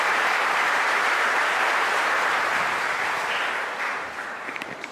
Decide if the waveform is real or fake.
fake